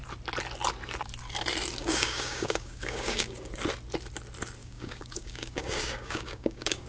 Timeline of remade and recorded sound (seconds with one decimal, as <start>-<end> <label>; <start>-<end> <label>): 0.0-1.8 recorded; 1.8-3.5 remade; 3.5-4.6 recorded; 4.6-6.9 remade